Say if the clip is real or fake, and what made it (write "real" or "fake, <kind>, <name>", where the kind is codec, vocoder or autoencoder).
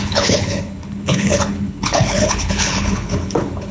fake, codec, HILCodec